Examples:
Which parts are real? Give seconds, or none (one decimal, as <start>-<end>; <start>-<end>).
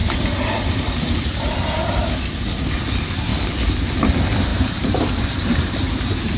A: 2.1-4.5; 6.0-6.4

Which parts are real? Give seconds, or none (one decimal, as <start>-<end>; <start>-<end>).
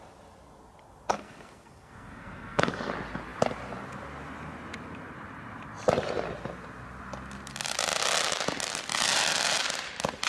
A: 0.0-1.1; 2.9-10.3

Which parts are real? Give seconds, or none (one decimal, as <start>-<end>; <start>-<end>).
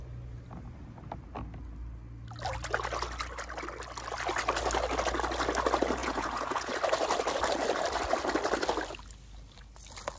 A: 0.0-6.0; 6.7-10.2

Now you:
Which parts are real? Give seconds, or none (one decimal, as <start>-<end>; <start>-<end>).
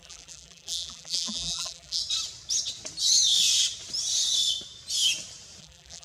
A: 2.0-5.6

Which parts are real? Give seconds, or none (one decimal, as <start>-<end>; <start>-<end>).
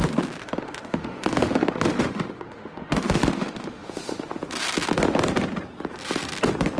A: 0.0-0.4; 4.4-6.8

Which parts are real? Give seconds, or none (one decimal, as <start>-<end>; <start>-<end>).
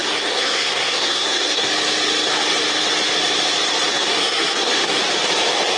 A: 1.7-3.9; 5.0-5.8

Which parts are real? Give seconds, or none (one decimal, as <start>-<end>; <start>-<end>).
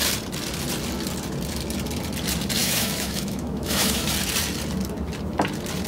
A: 0.0-2.6; 4.1-5.9